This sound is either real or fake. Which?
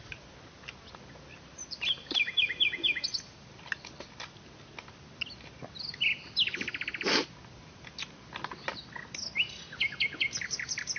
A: real